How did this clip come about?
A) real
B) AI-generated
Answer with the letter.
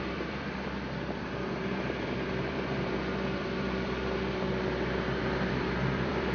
B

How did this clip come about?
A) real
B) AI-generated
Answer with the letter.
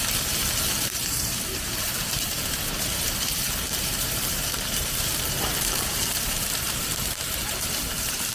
B